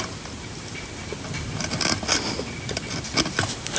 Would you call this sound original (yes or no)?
yes